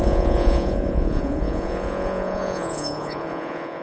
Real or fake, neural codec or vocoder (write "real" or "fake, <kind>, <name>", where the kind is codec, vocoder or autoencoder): fake, vocoder, Vocos